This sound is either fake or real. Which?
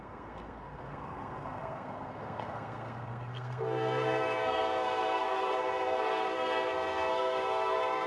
fake